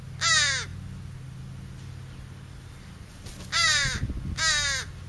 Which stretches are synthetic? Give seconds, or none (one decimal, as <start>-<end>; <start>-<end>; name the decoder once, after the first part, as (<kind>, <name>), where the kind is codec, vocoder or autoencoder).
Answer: none